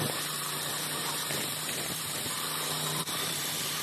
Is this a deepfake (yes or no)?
yes